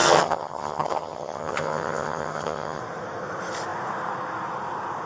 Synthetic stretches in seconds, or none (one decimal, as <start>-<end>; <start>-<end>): 0.0-2.8